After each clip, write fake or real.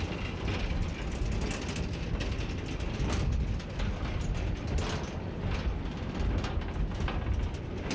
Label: real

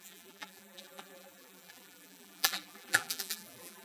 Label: fake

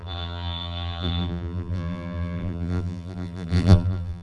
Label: fake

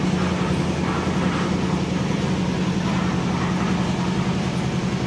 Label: real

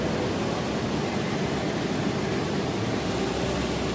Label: real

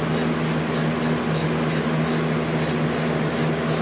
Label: real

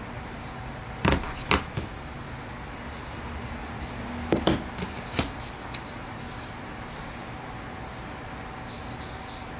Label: real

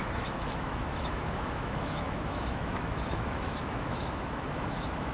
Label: fake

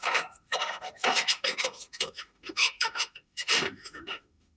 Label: fake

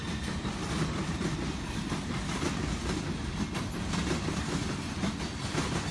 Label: real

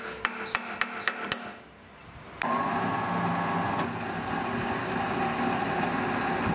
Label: real